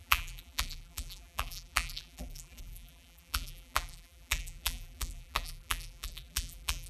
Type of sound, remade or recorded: remade